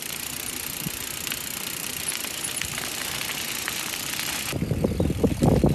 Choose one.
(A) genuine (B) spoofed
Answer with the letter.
A